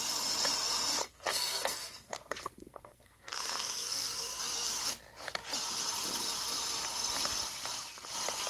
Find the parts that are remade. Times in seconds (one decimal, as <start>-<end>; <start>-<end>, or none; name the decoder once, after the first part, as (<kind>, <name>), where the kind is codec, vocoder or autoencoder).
1.0-4.4 (codec, SNAC)